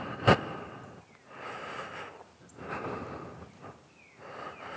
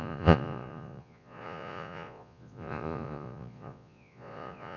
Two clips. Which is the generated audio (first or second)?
second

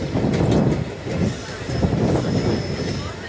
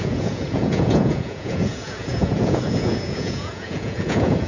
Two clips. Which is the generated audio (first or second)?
second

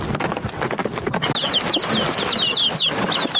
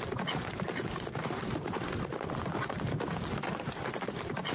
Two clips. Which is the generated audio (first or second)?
second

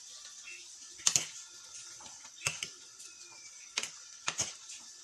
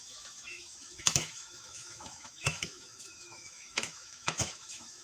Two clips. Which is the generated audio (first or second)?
second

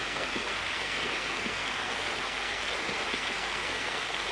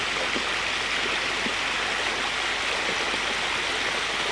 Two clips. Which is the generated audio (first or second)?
first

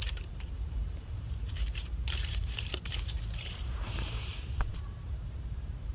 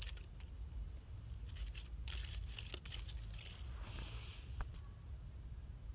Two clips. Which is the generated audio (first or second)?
first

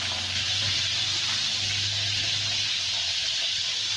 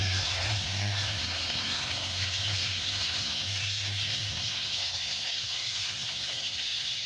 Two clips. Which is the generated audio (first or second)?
second